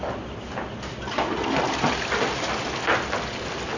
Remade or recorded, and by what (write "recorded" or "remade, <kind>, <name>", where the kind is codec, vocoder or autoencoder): recorded